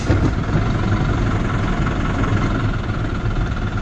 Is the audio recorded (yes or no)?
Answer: yes